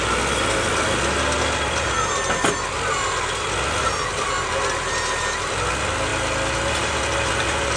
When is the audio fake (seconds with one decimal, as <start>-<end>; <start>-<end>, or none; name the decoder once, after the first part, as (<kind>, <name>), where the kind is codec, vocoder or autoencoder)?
none